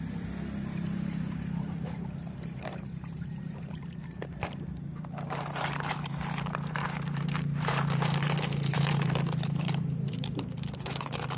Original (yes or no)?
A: no